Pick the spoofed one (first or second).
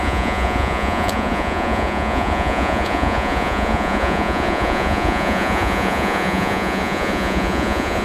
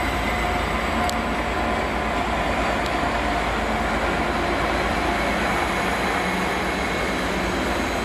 first